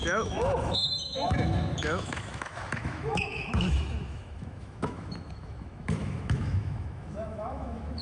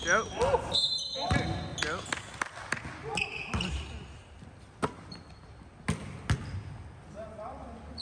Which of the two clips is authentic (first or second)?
second